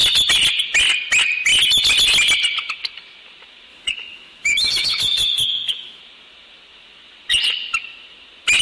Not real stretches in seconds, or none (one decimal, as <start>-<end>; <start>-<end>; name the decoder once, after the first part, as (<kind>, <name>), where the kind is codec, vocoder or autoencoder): 3.7-6.0 (autoencoder, DAC-VAE)

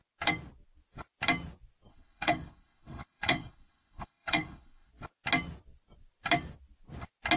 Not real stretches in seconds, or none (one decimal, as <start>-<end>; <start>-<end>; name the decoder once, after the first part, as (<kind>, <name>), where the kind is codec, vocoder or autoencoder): 1.9-4.9 (codec, HILCodec)